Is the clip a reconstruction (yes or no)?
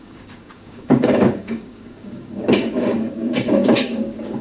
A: yes